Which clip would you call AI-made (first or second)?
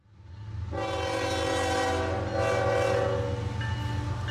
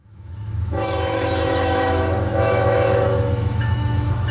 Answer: second